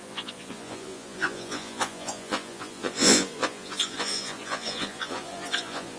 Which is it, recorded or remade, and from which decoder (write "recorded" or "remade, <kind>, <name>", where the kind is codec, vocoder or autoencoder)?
remade, vocoder, Vocos